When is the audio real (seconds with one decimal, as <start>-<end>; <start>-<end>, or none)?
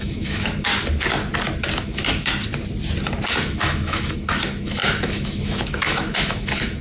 0.7-1.8; 2.3-3.3